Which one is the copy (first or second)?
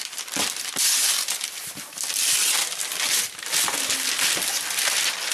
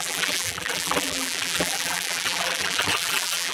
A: second